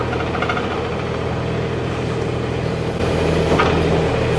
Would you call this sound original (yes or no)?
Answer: yes